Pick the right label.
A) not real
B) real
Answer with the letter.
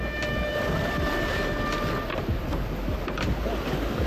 B